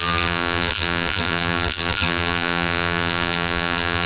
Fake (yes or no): yes